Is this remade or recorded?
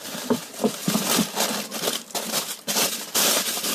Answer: recorded